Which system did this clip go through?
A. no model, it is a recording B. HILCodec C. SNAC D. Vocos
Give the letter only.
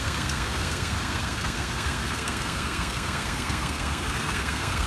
C